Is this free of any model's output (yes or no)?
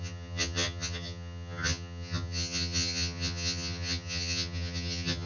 no